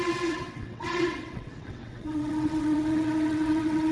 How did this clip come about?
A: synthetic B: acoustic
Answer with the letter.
A